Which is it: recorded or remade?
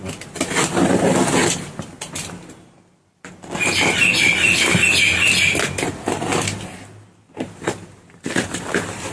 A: recorded